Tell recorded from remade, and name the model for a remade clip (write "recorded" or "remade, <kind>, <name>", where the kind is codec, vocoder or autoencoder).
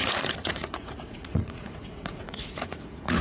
remade, vocoder, Vocos